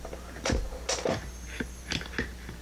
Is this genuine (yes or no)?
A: yes